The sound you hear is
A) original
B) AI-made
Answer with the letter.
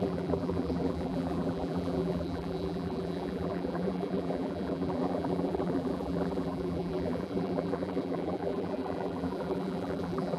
B